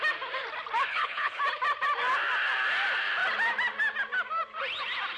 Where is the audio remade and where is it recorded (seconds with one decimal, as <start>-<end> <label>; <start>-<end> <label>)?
0.0-0.9 recorded; 0.9-1.4 remade; 1.4-5.2 recorded